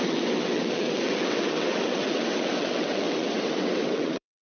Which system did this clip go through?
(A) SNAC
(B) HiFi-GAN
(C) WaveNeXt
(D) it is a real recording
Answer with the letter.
C